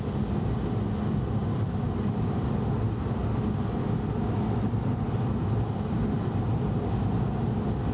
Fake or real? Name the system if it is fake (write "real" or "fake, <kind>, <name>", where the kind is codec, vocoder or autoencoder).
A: real